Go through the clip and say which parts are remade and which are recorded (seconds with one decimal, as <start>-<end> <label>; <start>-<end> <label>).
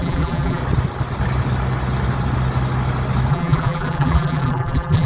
0.0-0.6 remade; 0.6-3.3 recorded; 3.3-5.1 remade